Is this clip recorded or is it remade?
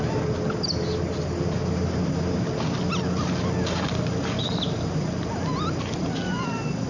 recorded